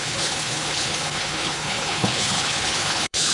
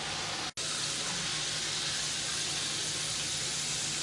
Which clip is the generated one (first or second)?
first